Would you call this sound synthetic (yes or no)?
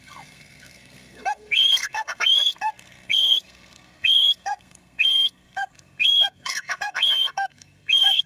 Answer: yes